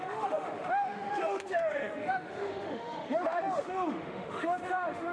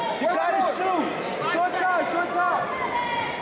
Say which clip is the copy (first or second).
first